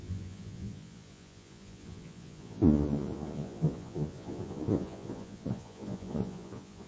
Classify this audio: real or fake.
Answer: fake